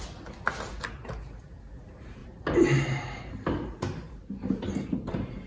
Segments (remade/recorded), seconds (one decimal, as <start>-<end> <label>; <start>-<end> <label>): 0.0-2.2 recorded; 2.2-5.5 remade